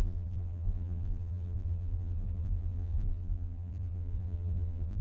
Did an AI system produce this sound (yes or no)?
yes